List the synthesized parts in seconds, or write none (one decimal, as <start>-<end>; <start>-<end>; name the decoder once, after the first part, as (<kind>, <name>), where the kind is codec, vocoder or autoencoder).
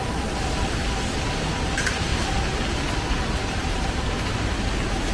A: 1.5-2.1 (vocoder, BigVGAN v2); 3.1-5.1